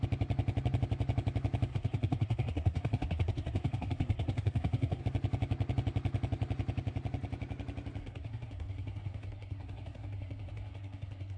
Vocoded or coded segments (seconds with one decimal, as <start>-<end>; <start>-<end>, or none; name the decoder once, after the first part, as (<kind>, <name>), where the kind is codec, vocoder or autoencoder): 1.7-5.0 (codec, SNAC); 8.0-11.4